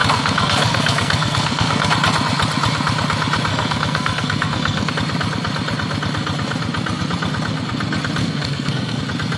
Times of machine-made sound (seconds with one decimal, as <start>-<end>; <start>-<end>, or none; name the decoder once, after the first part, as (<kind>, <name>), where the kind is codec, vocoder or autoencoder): 0.0-1.9 (codec, SNAC); 3.5-4.9; 8.2-9.0